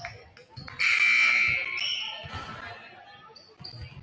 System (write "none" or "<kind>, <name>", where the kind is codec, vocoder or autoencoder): none